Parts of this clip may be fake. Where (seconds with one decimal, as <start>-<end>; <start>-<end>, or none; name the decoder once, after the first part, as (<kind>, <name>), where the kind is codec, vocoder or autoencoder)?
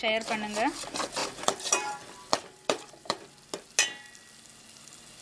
1.2-3.2 (vocoder, BigVGAN v2)